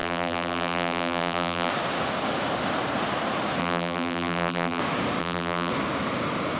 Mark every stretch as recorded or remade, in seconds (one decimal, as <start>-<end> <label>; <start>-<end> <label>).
0.0-1.7 remade; 1.7-3.6 recorded; 3.6-4.8 remade; 4.8-5.2 recorded; 5.2-5.7 remade; 5.7-6.6 recorded